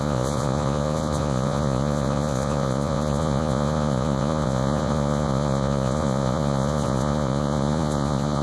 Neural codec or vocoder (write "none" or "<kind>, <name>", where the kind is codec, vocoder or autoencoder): vocoder, Vocos